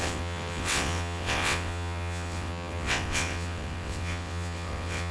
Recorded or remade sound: remade